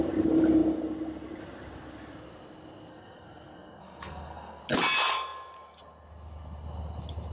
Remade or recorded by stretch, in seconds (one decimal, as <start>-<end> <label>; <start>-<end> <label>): 0.0-2.9 recorded; 2.9-4.6 remade; 4.6-7.3 recorded